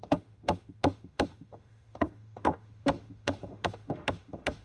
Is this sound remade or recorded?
remade